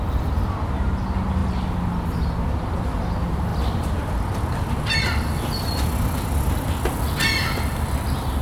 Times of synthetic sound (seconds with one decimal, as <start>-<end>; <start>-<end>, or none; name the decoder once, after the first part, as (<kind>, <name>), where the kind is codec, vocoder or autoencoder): 3.5-6.5 (vocoder, BigVGAN v2)